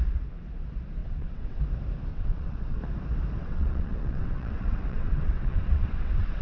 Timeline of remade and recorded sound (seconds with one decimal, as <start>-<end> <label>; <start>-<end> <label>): 0.0-1.0 recorded; 1.0-1.6 remade; 1.6-2.1 recorded; 2.1-2.8 remade; 2.8-3.4 recorded; 3.4-6.4 remade